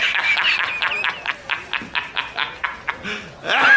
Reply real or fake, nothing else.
real